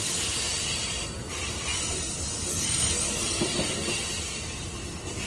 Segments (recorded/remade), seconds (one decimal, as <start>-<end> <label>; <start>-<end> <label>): 0.0-2.5 recorded; 2.5-3.4 remade; 3.4-5.3 recorded